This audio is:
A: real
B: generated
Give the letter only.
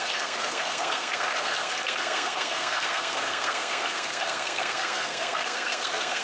B